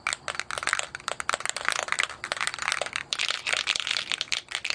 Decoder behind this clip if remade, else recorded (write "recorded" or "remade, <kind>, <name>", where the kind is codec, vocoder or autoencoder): recorded